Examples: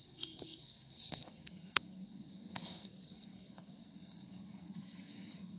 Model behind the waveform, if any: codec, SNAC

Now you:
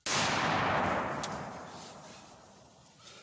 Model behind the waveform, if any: none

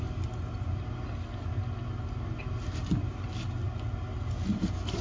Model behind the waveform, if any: none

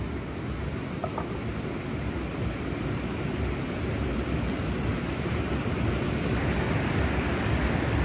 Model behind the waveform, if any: none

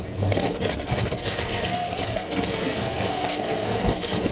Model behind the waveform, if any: codec, SNAC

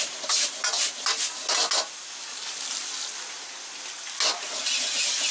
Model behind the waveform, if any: none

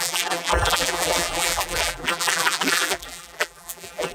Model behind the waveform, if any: vocoder, BigVGAN v2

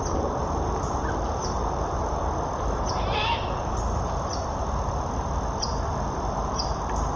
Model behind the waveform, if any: vocoder, BigVGAN v2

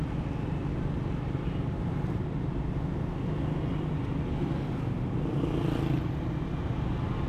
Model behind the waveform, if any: none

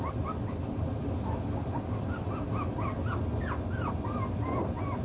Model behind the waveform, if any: none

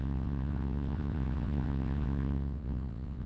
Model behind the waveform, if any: vocoder, WaveNeXt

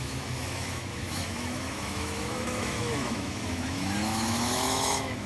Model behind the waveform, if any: autoencoder, DAC-VAE